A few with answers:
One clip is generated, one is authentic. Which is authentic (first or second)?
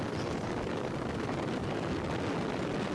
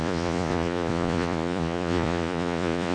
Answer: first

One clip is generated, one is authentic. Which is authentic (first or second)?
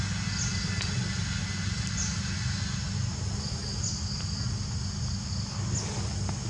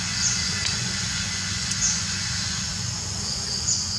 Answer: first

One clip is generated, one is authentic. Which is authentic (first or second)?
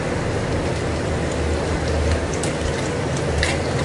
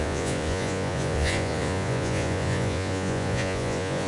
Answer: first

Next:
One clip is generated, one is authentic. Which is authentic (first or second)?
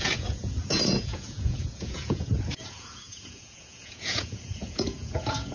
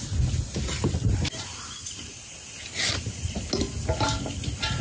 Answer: second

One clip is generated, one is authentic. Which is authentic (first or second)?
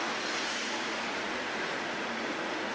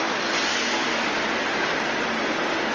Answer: second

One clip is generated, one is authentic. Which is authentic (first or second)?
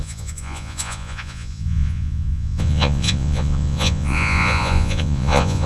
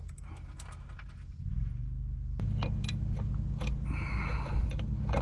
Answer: second